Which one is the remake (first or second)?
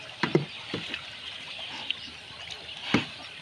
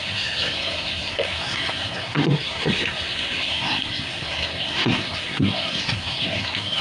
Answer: second